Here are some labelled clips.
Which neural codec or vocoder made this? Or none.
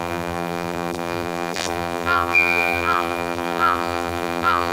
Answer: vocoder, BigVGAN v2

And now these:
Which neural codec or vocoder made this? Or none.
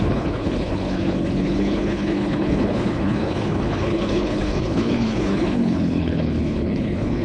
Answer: codec, HILCodec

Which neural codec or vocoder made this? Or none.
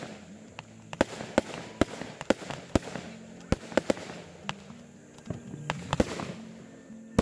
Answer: none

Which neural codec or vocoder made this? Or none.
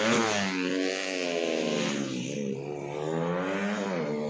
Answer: none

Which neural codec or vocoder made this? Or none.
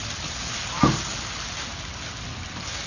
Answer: none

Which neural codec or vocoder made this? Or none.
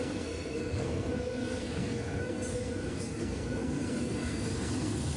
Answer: codec, SNAC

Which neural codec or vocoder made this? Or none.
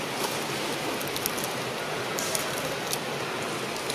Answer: none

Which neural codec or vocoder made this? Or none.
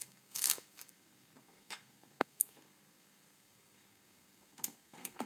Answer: codec, SNAC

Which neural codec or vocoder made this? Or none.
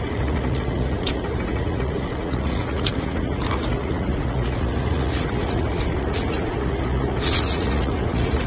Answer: vocoder, Vocos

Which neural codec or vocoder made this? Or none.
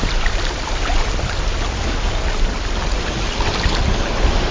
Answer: none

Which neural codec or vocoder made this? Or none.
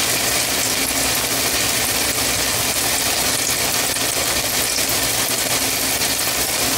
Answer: none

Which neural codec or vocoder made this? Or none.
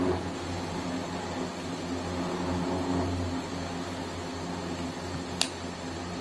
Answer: none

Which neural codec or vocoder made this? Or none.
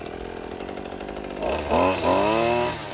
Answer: none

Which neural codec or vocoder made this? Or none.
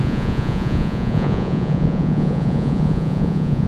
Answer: vocoder, Vocos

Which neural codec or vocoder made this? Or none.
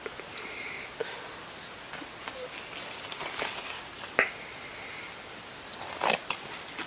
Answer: none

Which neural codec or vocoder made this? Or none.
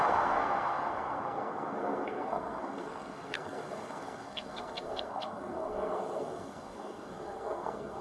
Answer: codec, SNAC